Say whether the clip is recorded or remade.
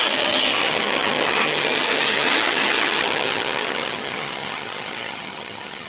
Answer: remade